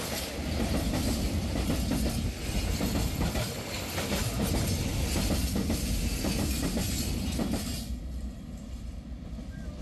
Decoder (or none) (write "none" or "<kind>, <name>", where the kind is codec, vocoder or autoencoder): none